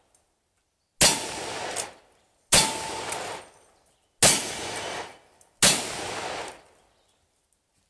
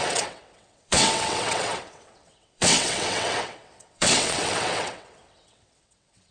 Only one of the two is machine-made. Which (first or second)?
second